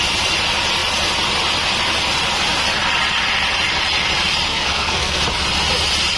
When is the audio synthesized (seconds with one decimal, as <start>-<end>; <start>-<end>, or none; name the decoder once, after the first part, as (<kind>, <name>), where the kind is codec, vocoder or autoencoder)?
4.5-5.2 (codec, SNAC)